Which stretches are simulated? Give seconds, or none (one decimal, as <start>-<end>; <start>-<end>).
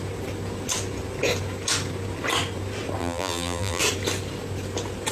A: 3.0-3.8